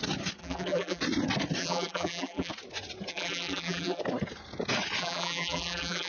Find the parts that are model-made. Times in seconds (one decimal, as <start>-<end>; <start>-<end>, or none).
0.4-1.0; 1.6-2.5; 3.1-4.0; 5.0-6.1